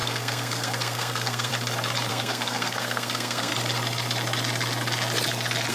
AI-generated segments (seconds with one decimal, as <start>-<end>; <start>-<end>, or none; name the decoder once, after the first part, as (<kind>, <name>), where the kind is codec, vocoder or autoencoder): 0.0-1.5 (codec, SNAC); 2.1-3.5